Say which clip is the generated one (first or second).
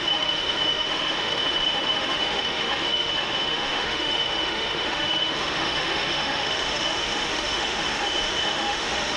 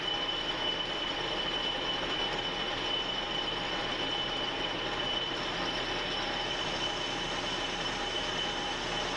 first